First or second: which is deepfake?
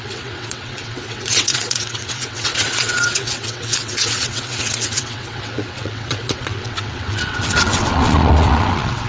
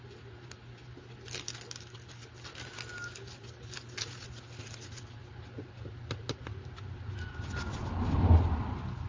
first